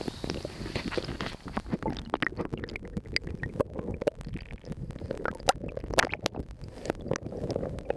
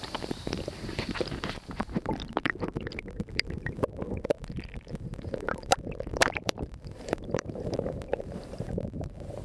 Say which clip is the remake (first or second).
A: second